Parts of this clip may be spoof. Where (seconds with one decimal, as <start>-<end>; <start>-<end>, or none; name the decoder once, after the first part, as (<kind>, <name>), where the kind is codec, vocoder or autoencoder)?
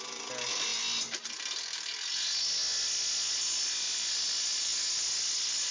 none